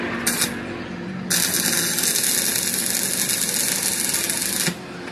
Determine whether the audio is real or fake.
real